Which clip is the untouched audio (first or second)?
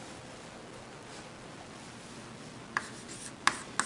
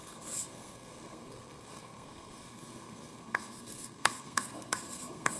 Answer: first